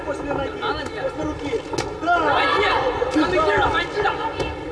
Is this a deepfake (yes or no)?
no